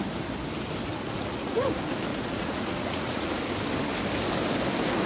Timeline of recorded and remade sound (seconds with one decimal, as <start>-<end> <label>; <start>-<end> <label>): 0.0-0.9 recorded; 0.9-1.7 remade; 1.7-2.1 recorded; 2.1-3.3 remade; 3.3-5.1 recorded